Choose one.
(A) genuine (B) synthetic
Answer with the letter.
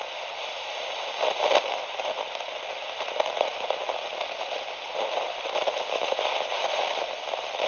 A